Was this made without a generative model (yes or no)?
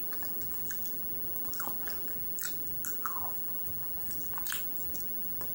yes